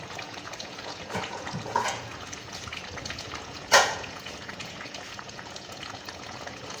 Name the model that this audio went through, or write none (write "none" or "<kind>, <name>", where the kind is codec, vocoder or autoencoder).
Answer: vocoder, Vocos